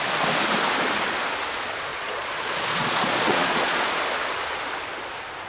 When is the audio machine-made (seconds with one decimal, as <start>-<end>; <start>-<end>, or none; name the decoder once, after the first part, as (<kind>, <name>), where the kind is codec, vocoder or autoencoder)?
1.9-4.0 (vocoder, Vocos)